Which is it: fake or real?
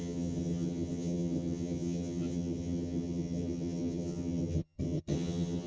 fake